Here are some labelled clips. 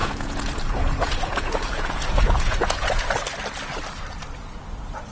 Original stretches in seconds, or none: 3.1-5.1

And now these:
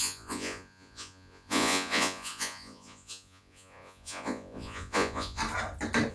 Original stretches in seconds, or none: 5.4-6.1